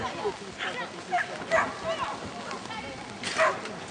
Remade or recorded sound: recorded